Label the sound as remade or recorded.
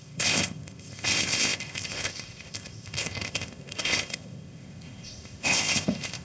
remade